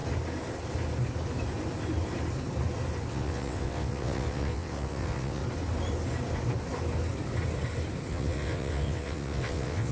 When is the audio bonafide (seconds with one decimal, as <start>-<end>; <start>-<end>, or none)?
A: 0.0-3.1; 5.4-8.1